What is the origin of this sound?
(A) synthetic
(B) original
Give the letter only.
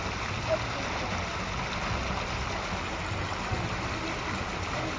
B